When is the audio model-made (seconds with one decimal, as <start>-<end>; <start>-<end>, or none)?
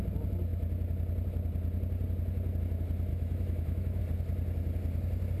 3.1-4.0